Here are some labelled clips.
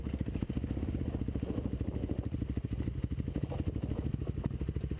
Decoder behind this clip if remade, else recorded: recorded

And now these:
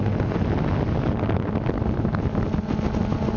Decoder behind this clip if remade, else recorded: recorded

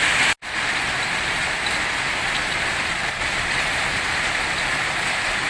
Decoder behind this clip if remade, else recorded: recorded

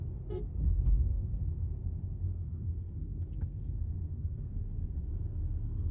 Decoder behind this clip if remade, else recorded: remade, codec, SNAC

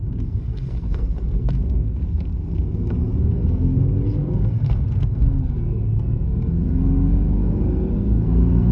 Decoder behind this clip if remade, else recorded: remade, codec, SNAC